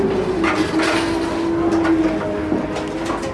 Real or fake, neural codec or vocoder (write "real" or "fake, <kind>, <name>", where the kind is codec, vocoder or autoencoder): real